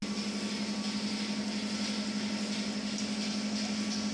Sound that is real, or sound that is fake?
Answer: real